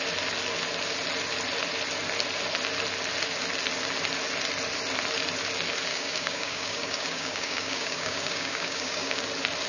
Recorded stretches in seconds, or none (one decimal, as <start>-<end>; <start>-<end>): 0.0-5.9; 9.2-9.7